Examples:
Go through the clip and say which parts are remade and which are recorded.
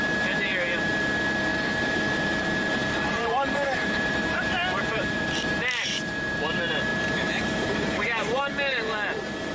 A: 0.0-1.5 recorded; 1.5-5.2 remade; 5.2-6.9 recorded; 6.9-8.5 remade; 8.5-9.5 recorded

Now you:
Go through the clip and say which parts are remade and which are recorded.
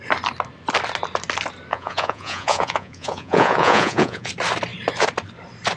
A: 0.0-1.7 recorded; 1.7-4.3 remade; 4.3-5.8 recorded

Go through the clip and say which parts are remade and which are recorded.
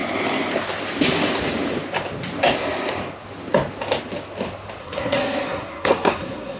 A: 0.0-4.8 recorded; 4.8-6.6 remade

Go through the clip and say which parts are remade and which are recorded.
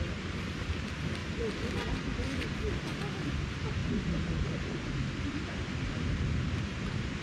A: 0.0-7.2 recorded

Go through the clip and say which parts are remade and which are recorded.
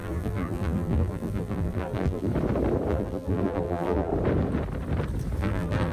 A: 0.0-2.3 remade; 2.3-2.9 recorded; 2.9-4.1 remade; 4.1-5.4 recorded; 5.4-5.9 remade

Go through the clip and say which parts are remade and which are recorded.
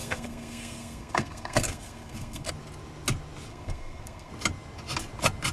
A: 0.0-2.5 remade; 2.5-3.5 recorded; 3.5-4.3 remade; 4.3-5.5 recorded